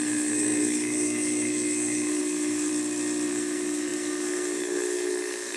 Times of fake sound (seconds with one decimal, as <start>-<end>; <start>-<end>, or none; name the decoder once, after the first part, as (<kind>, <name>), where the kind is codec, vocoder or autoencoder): 0.0-2.7 (codec, SNAC); 3.3-5.6